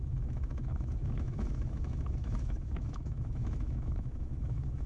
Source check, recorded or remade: remade